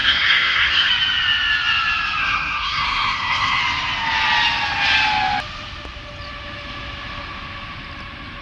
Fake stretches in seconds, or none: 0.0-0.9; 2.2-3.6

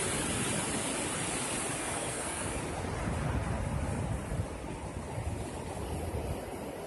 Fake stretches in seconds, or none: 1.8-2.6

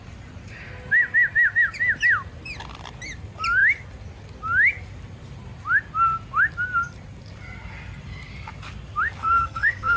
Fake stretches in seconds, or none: 9.2-10.0

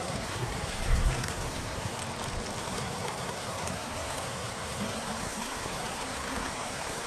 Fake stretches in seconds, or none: 0.0-2.0; 2.6-7.1

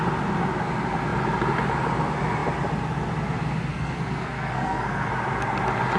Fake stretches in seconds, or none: 3.7-5.1